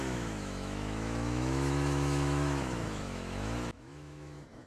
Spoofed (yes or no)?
yes